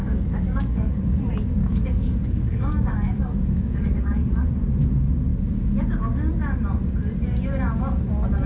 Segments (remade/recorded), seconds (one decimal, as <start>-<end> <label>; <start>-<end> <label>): 0.0-1.2 remade; 1.2-1.6 recorded; 1.6-4.5 remade; 4.5-8.5 recorded